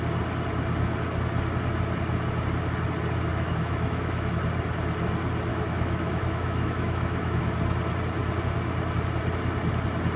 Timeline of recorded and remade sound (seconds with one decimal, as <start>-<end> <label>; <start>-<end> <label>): 0.0-3.3 recorded; 3.3-4.4 remade; 4.4-5.5 recorded; 5.5-7.4 remade; 7.4-10.2 recorded